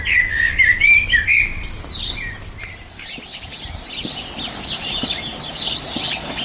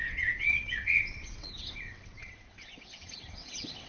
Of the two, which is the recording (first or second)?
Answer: first